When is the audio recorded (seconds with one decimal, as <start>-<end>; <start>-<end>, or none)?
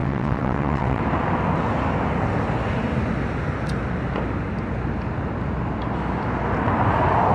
1.0-7.3